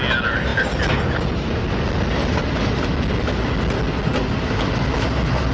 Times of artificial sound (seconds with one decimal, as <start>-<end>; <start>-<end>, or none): none